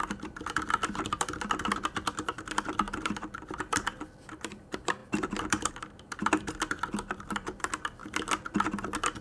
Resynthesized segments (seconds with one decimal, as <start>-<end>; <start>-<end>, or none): 0.0-8.0